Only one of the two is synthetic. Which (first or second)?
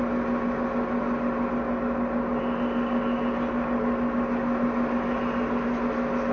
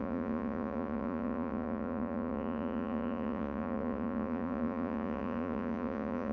second